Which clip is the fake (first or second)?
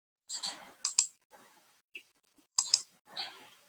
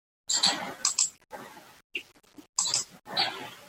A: first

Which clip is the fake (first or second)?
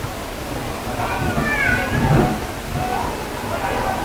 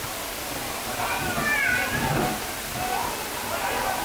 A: second